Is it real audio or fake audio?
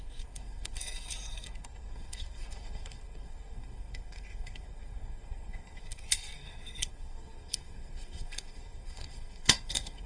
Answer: fake